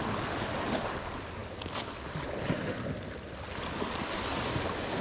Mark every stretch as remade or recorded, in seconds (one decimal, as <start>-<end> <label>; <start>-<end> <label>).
0.0-5.0 recorded